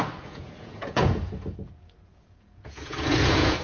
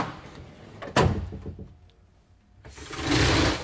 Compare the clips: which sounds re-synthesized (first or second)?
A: first